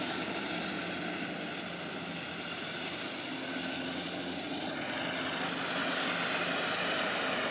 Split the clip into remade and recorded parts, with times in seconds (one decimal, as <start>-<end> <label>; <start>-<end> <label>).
0.0-7.5 recorded